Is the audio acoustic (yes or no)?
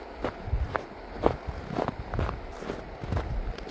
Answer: yes